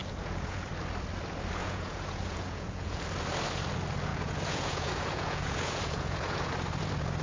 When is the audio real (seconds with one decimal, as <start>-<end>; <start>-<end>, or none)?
0.7-1.6; 3.0-4.1; 6.5-7.2

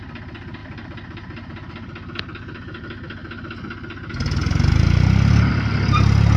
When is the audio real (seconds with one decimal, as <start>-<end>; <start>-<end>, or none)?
0.0-6.4